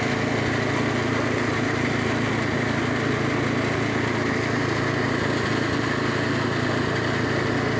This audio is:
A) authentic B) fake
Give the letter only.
A